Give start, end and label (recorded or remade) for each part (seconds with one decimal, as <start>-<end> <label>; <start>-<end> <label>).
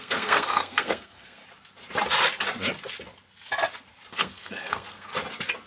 0.0-1.4 remade; 1.4-4.1 recorded; 4.1-5.1 remade; 5.1-5.7 recorded